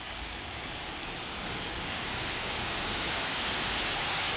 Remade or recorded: remade